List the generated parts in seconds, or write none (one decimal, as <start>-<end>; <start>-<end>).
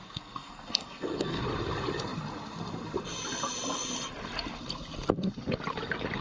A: 0.0-1.4